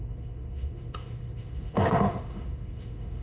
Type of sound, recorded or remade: remade